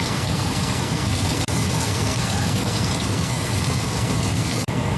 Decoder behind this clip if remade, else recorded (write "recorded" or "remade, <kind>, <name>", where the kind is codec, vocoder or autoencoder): remade, codec, SNAC